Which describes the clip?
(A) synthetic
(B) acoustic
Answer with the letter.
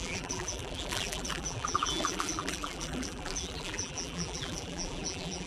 A